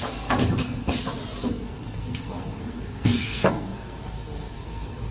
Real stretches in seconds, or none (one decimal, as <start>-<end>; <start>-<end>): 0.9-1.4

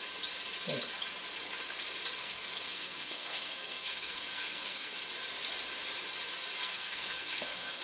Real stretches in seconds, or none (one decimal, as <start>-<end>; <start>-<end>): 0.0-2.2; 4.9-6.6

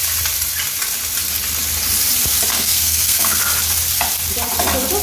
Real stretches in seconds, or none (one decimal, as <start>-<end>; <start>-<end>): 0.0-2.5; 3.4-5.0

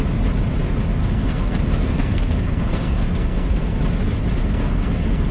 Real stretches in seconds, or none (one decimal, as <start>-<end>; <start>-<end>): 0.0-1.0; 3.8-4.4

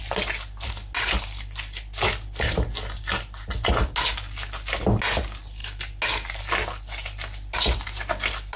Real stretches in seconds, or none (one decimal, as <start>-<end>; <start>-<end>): 0.0-8.6